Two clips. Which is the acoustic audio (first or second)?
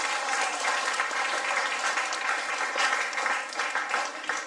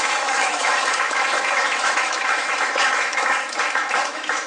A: first